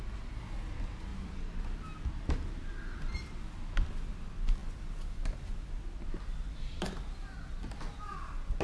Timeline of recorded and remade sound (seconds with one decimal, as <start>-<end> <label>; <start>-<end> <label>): 0.0-8.6 recorded